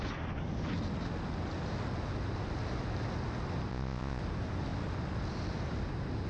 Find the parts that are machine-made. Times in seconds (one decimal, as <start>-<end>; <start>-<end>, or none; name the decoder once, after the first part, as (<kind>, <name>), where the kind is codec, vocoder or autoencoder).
3.7-4.2 (vocoder, Vocos)